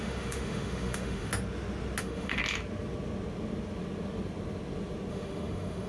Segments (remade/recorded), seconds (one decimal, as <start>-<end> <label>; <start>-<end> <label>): 0.0-1.3 remade; 1.3-2.0 recorded; 2.0-2.4 remade; 2.4-5.1 recorded; 5.1-5.9 remade